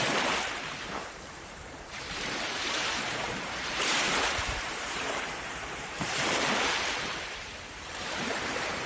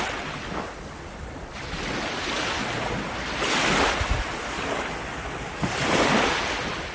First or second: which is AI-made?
first